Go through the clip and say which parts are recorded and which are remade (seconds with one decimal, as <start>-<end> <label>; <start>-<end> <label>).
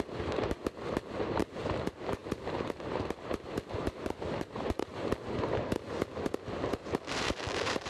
0.0-0.6 remade; 0.6-1.2 recorded; 1.2-4.9 remade; 4.9-7.1 recorded; 7.1-7.9 remade